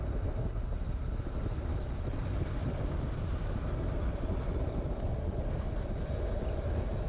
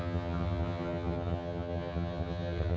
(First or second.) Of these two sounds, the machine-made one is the second